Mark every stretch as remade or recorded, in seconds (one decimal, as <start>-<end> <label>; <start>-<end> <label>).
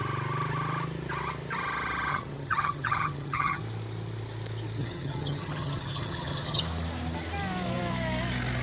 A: 0.0-2.1 recorded; 2.1-3.6 remade; 3.6-4.8 recorded; 4.8-6.6 remade; 6.6-8.6 recorded